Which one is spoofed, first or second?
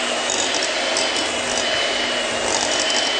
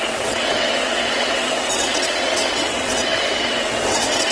second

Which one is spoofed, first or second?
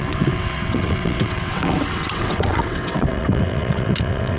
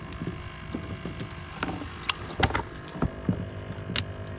first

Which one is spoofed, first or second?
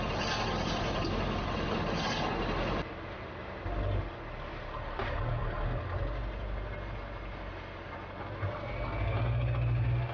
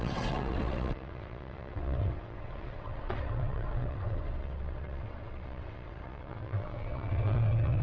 second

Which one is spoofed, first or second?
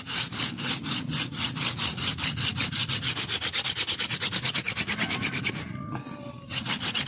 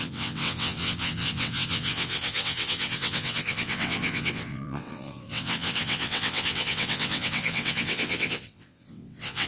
second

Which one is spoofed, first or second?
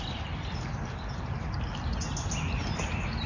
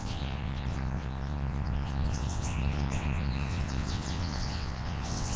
second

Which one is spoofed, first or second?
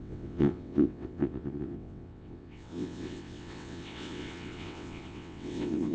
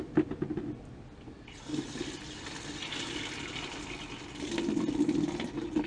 first